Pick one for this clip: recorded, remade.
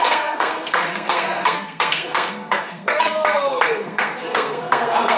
remade